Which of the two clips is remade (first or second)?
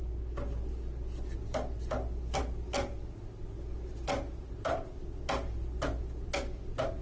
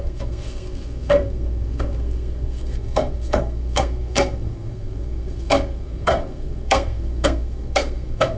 second